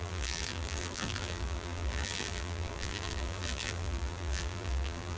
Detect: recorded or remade remade